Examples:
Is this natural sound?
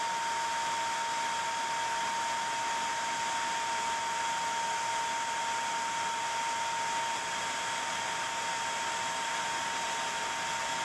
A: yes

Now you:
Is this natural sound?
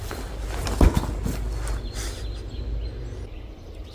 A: yes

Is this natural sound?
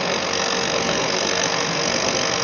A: no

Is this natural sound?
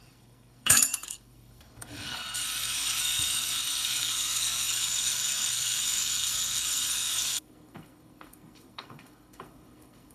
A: no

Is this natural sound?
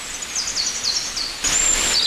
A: yes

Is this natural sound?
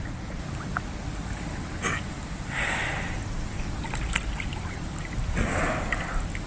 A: yes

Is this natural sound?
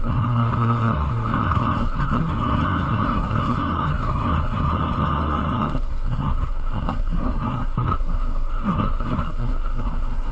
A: no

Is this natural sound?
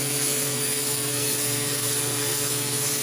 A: no